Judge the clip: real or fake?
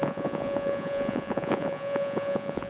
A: fake